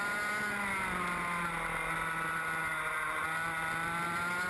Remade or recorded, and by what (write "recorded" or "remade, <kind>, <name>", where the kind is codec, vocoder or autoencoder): recorded